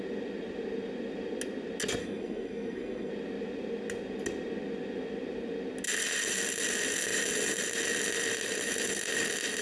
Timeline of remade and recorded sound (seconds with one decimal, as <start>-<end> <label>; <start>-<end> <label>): 0.0-2.0 recorded; 2.0-3.1 remade; 3.1-9.6 recorded